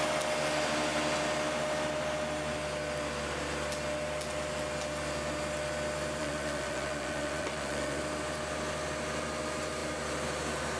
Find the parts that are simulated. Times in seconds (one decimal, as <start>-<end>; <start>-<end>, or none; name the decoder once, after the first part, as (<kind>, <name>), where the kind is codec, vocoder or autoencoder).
6.2-8.0 (vocoder, Vocos)

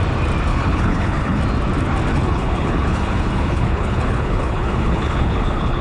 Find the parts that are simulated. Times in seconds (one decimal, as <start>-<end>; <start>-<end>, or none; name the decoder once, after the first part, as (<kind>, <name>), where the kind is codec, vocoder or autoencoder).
0.5-1.4 (codec, HILCodec); 2.1-5.8

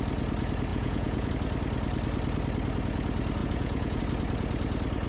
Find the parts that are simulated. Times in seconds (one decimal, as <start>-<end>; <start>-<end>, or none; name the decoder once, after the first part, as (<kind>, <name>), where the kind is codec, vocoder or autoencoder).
0.7-1.3 (vocoder, Vocos); 3.4-4.0

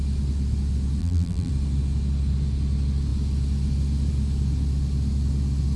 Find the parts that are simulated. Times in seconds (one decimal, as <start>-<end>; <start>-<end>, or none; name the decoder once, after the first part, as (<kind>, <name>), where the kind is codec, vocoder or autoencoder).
1.0-1.5 (vocoder, BigVGAN v2)

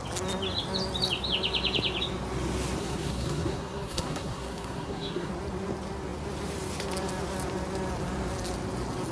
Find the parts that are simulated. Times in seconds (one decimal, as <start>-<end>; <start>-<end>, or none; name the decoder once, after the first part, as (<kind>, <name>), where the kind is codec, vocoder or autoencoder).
2.8-5.3 (codec, SNAC)

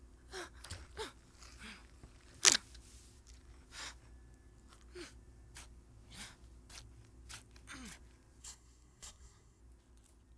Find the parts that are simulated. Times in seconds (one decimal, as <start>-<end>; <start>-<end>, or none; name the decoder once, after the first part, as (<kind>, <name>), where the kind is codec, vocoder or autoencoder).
8.4-9.6 (codec, SNAC)